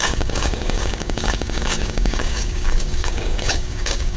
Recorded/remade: remade